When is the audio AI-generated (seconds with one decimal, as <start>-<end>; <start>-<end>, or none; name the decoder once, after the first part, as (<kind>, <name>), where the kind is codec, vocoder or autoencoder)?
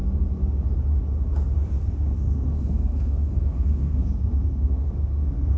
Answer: 1.8-5.6 (codec, SNAC)